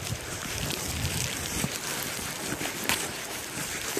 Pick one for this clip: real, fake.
real